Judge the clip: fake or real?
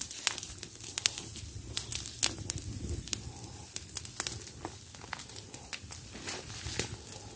real